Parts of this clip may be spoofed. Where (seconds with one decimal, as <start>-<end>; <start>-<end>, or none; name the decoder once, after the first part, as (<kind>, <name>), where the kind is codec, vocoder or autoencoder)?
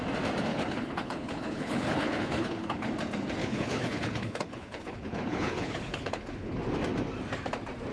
0.5-2.9 (codec, HILCodec); 3.4-6.6